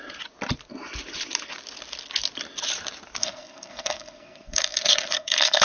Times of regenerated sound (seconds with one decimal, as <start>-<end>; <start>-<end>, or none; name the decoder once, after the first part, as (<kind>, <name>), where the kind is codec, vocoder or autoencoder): 3.2-5.6 (codec, SNAC)